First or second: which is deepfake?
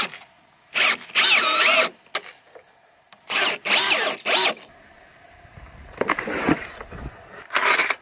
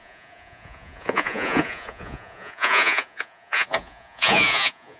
second